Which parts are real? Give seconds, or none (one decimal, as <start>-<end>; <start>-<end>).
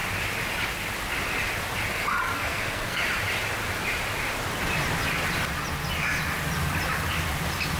0.0-1.9; 3.0-7.8